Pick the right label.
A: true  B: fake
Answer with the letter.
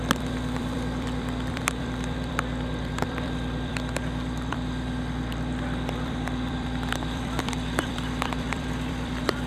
B